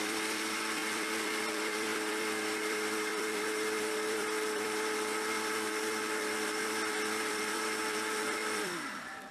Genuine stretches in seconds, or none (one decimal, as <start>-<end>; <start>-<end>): none